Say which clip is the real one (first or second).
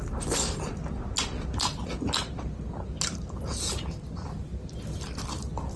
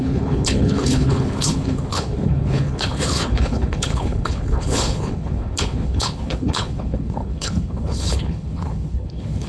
first